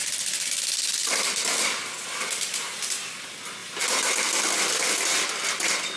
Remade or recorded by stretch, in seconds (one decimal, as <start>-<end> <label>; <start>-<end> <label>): 0.0-3.6 recorded; 3.6-4.1 remade; 4.1-6.0 recorded